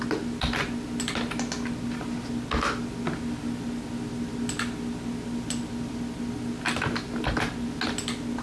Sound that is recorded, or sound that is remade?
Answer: recorded